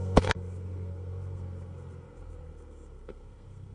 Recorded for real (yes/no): no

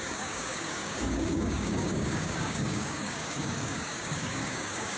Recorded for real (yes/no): no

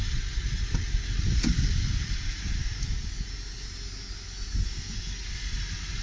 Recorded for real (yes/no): yes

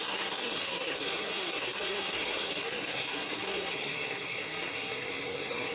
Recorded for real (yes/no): no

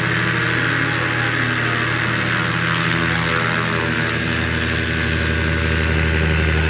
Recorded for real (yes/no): yes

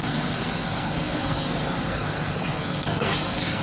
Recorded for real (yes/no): no